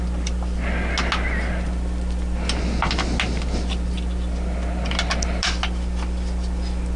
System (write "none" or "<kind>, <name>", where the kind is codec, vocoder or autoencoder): none